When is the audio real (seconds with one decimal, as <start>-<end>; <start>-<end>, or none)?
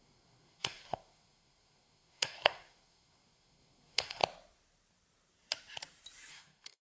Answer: 4.2-6.3